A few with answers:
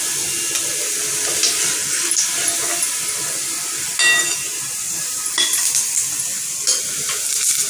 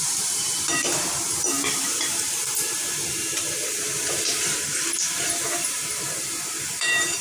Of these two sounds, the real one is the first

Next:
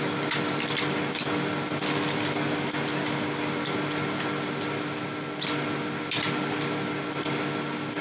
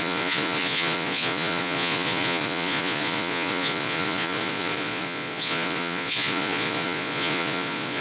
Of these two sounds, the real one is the first